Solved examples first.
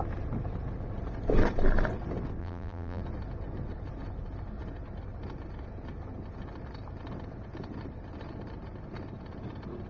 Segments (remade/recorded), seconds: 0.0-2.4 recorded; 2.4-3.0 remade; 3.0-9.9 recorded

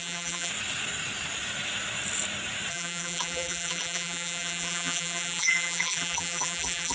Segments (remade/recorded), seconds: 0.0-0.5 remade; 0.5-2.7 recorded; 2.7-6.9 remade

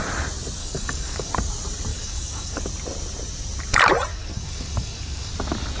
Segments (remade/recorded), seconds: 0.0-0.6 recorded; 0.6-1.3 remade; 1.3-1.9 recorded; 1.9-2.6 remade; 2.6-4.1 recorded; 4.1-5.3 remade; 5.3-5.8 recorded

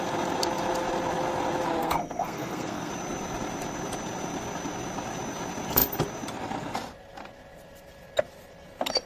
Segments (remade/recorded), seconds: 0.0-1.8 recorded; 1.8-2.9 remade; 2.9-9.1 recorded

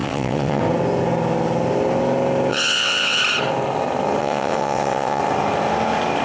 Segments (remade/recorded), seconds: 0.0-0.6 remade; 0.6-2.5 recorded; 2.5-3.2 remade; 3.2-4.2 recorded; 4.2-5.2 remade; 5.2-6.2 recorded